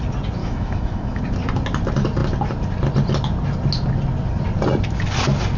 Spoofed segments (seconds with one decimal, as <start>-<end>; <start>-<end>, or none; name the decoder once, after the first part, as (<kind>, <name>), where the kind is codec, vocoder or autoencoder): 0.4-1.2 (autoencoder, DAC-VAE)